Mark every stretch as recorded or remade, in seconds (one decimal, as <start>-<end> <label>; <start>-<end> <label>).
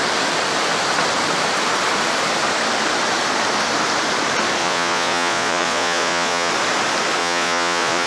0.0-4.6 recorded; 4.6-6.5 remade; 6.5-7.2 recorded; 7.2-8.1 remade